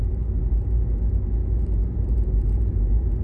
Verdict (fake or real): real